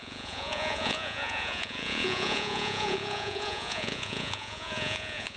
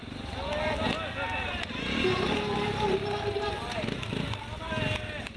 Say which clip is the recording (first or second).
second